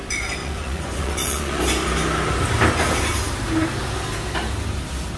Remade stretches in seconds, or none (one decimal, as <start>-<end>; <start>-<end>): 0.4-1.6